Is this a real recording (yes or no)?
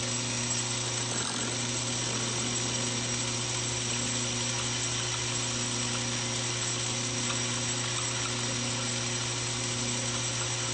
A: yes